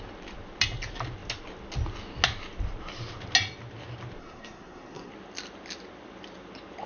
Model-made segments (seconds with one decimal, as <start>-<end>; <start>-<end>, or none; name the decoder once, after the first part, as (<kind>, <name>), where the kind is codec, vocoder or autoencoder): 4.2-5.1 (codec, SNAC)